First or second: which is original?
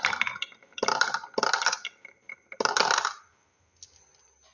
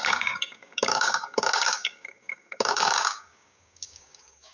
first